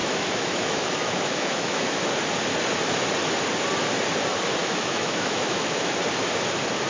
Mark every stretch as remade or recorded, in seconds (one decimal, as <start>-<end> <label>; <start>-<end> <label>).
0.0-2.1 remade; 2.1-4.6 recorded; 4.6-5.9 remade; 5.9-6.9 recorded